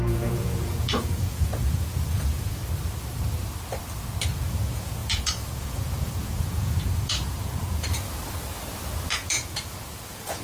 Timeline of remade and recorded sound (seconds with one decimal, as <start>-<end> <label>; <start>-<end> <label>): 0.0-2.6 remade; 2.6-4.4 recorded; 4.4-7.9 remade; 7.9-9.1 recorded; 9.1-10.4 remade